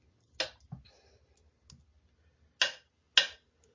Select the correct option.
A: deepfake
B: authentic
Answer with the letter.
B